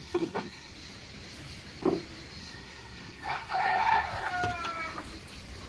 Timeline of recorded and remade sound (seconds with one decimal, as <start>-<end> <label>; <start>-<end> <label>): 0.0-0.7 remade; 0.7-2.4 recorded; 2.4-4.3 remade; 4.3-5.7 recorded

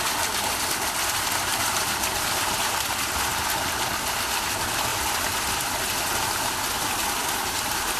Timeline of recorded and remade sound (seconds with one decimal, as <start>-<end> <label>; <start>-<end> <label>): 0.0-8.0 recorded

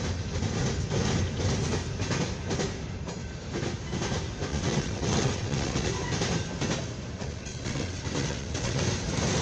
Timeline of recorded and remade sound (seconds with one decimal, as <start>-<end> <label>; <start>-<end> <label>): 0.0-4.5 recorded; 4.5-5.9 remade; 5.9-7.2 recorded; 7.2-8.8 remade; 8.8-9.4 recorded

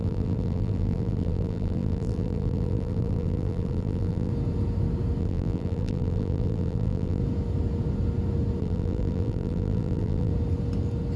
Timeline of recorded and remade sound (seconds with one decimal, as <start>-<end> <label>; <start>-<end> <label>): 0.0-4.3 remade; 4.3-5.2 recorded; 5.2-7.2 remade; 7.2-8.6 recorded; 8.6-10.3 remade; 10.3-11.2 recorded